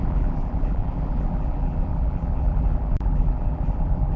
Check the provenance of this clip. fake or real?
fake